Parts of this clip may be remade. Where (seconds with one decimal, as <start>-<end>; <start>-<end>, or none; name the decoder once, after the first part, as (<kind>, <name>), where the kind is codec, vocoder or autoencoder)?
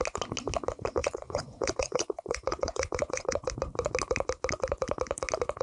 1.0-3.5 (vocoder, Vocos)